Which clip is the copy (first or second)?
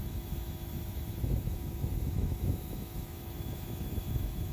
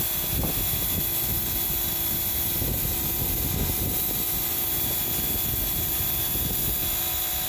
first